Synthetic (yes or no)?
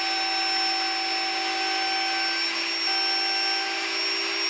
no